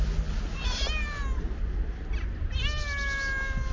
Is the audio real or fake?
real